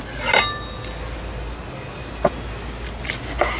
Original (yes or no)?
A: yes